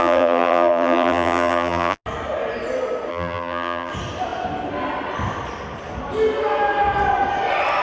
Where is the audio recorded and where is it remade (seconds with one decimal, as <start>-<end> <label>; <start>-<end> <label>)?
0.0-2.0 remade; 2.0-3.1 recorded; 3.1-3.9 remade; 3.9-7.8 recorded